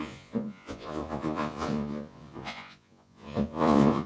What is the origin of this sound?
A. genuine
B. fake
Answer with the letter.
B